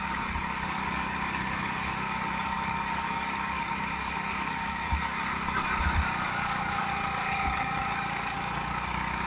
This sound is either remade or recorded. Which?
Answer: remade